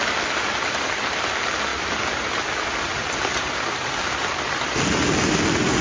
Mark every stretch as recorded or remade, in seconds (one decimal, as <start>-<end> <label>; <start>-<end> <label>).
0.0-1.7 recorded; 1.7-4.7 remade; 4.7-5.8 recorded